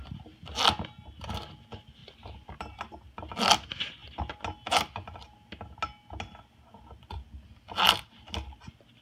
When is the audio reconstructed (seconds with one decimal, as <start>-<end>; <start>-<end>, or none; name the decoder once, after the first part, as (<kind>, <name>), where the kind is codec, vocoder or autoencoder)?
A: none